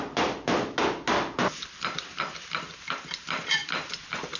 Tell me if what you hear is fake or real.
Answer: real